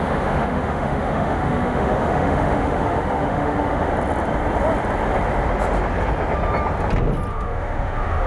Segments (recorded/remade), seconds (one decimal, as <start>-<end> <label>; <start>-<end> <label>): 0.0-3.9 remade; 3.9-7.3 recorded; 7.3-8.3 remade